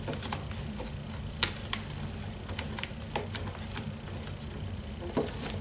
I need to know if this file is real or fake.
real